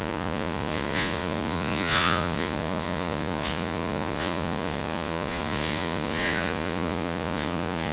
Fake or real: fake